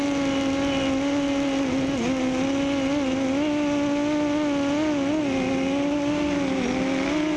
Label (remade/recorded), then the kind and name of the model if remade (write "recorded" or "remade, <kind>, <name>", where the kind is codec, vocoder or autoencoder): recorded